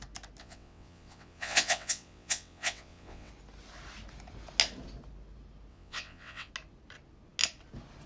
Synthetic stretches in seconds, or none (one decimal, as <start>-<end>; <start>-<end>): 0.4-3.3; 5.7-6.5

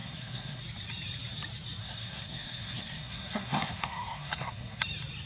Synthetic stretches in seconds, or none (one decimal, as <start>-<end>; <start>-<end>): 0.0-0.6; 1.8-4.8

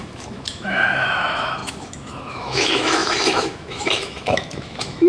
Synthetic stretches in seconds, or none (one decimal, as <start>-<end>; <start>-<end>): 0.0-5.1

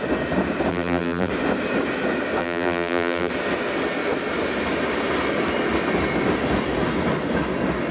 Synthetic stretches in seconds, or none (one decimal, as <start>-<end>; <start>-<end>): 0.7-1.3; 2.4-3.3

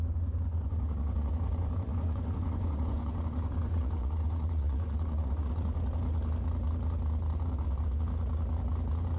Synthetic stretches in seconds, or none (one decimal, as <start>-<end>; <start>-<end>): 0.5-5.8

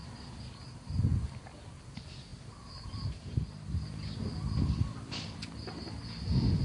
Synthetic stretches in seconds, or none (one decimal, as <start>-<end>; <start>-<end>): none

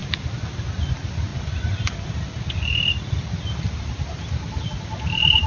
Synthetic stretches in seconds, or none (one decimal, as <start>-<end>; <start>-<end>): none